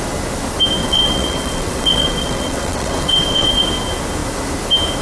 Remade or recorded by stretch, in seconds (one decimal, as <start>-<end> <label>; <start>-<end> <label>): 0.0-0.8 recorded; 0.8-3.6 remade; 3.6-5.0 recorded